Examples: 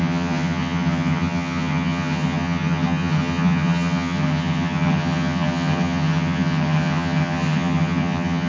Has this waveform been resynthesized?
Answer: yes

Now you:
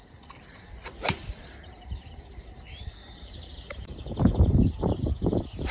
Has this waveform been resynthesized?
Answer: yes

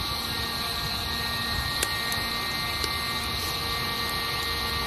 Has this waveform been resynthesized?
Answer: no